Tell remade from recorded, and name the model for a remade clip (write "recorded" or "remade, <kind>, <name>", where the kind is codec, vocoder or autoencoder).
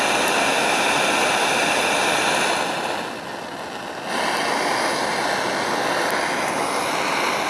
recorded